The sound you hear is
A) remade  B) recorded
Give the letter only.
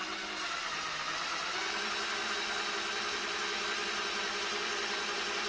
B